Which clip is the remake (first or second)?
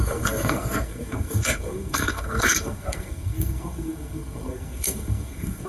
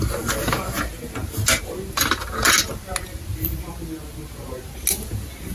first